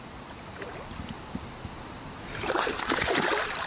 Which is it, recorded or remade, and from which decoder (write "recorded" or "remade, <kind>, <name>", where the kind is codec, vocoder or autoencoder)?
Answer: recorded